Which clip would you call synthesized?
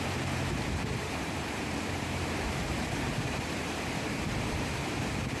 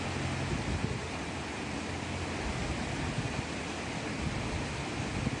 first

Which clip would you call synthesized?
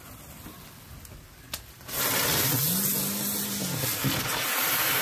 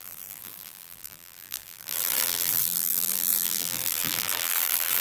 second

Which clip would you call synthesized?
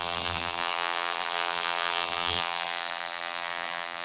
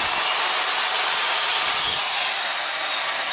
first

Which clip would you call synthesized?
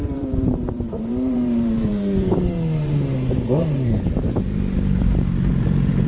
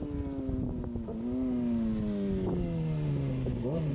first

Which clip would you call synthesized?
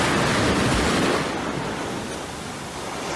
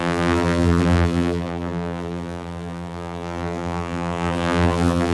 second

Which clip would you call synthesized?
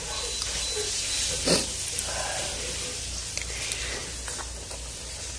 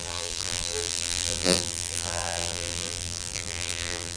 second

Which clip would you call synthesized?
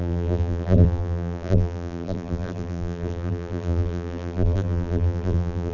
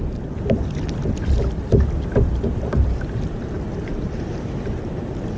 first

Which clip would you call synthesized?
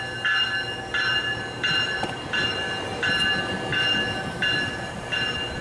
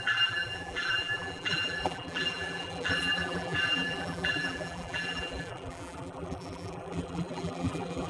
second